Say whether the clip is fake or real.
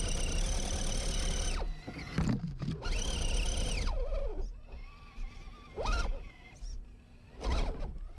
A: real